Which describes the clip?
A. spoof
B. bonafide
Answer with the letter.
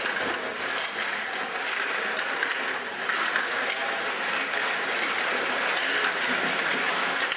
B